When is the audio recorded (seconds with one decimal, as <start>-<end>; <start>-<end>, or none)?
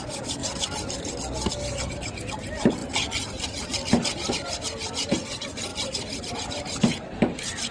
0.0-7.7